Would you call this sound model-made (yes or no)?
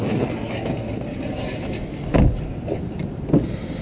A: no